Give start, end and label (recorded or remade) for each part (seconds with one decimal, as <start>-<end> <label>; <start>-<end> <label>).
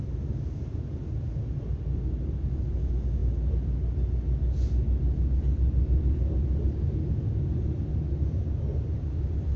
0.0-9.6 recorded